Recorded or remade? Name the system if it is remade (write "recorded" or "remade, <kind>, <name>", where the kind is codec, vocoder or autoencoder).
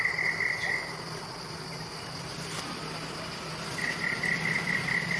recorded